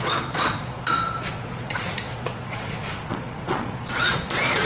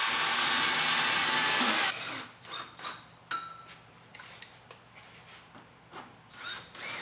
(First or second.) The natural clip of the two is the second